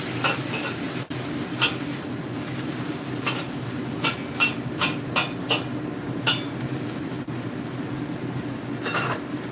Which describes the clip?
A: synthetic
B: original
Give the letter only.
B